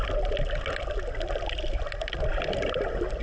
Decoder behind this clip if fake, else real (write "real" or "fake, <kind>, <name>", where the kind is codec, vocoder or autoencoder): real